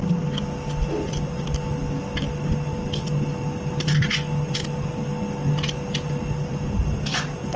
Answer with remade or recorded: recorded